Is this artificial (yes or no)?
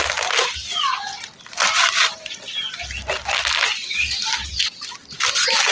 no